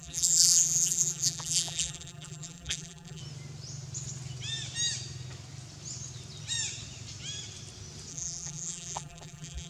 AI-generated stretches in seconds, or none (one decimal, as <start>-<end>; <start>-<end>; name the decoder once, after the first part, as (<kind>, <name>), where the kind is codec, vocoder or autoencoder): 0.0-3.2 (vocoder, BigVGAN v2); 8.1-9.7